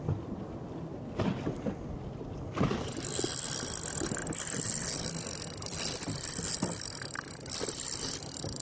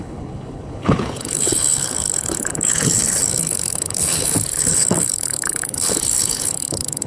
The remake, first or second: second